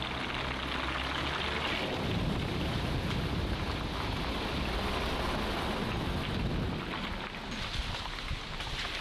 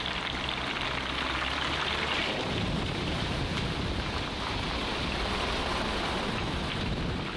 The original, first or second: first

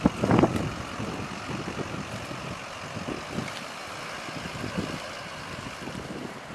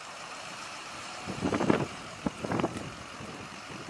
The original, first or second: first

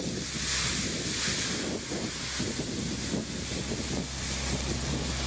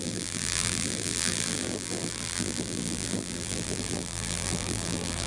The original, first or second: first